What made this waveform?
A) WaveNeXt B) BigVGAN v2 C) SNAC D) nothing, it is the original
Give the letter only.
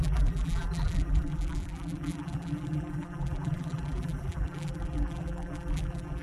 B